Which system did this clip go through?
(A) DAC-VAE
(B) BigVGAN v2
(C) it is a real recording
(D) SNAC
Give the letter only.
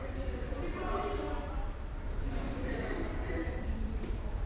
B